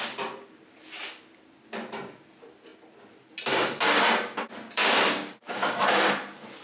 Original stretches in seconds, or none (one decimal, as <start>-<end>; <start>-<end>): 0.0-4.8; 6.1-6.6